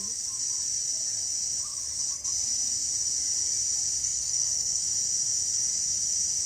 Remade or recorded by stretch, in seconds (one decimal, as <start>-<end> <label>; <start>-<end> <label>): 0.0-4.0 recorded; 4.0-4.8 remade; 4.8-6.5 recorded